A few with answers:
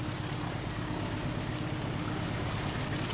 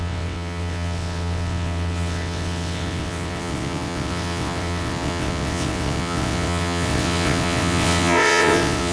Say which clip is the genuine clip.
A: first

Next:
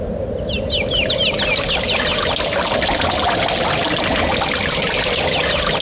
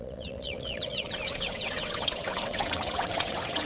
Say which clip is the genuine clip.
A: first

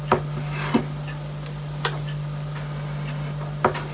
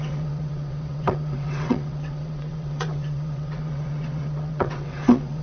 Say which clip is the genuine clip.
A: first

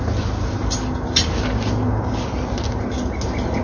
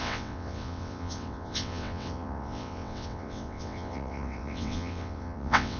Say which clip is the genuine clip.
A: first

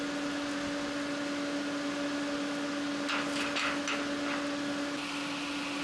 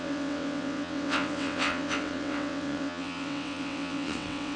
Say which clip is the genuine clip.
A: first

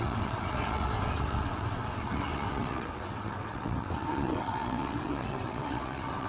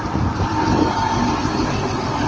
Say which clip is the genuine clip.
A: second